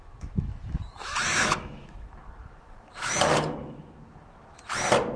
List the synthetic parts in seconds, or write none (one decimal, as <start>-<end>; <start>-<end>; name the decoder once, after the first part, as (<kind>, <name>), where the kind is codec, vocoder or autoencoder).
0.0-3.1 (autoencoder, DAC-VAE); 3.6-4.6